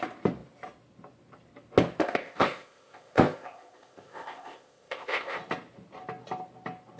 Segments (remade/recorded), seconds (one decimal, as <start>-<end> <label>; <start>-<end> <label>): 0.0-2.0 recorded; 2.0-5.4 remade; 5.4-7.0 recorded